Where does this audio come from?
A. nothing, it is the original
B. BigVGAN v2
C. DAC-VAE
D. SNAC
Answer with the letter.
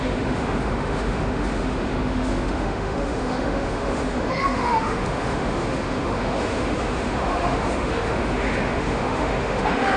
C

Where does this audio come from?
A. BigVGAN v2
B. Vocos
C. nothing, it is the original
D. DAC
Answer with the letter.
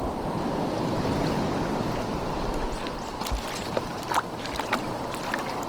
C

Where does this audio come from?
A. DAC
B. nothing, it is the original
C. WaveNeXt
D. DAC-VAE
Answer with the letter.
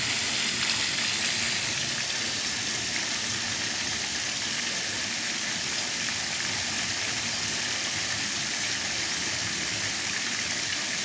B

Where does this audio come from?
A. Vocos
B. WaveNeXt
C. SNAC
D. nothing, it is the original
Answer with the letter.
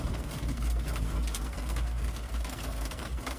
C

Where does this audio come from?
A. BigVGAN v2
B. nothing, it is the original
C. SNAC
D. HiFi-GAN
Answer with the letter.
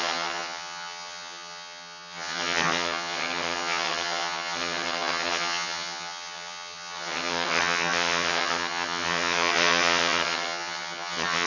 D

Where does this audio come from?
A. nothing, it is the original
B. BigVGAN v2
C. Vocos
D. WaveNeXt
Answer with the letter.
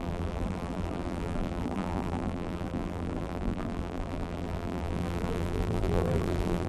B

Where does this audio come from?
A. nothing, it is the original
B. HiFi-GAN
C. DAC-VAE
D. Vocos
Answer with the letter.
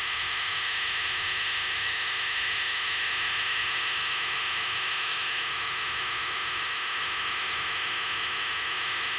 C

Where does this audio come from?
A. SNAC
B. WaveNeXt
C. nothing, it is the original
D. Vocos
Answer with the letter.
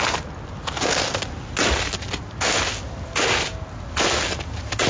C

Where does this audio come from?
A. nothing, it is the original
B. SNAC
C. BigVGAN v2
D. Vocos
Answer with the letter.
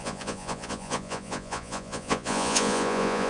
D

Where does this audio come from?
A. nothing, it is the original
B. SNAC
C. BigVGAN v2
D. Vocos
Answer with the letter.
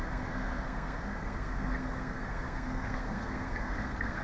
B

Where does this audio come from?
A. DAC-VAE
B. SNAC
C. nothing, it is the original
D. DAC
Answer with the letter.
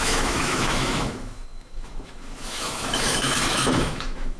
A